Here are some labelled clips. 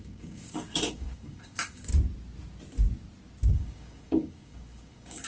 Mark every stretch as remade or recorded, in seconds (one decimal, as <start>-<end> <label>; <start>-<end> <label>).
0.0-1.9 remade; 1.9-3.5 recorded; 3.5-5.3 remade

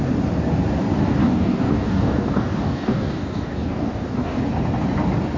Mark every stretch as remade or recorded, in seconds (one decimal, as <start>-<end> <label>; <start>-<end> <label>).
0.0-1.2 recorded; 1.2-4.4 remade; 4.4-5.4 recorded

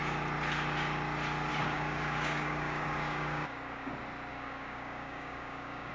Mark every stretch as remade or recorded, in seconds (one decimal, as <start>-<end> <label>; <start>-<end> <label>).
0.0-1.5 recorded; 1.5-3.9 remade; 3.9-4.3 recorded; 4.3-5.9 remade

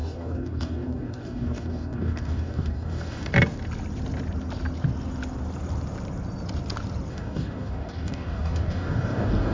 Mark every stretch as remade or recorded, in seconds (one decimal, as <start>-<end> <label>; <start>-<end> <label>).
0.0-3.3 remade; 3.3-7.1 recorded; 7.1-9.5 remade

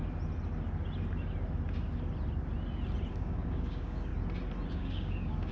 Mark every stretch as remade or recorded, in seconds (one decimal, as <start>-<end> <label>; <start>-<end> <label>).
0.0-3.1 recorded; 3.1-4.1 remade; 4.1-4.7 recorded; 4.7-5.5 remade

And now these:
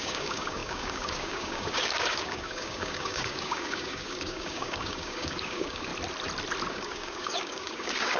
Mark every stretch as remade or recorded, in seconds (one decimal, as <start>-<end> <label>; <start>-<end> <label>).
0.0-5.9 remade; 5.9-6.7 recorded; 6.7-8.2 remade